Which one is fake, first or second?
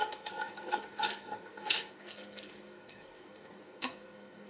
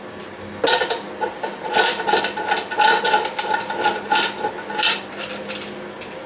first